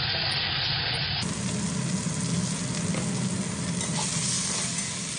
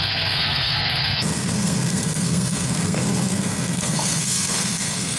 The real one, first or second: first